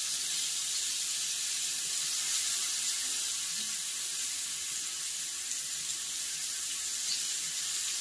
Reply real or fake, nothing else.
real